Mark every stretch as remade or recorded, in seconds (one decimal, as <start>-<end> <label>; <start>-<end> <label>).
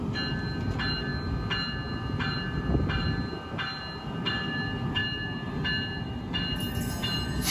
0.0-7.5 recorded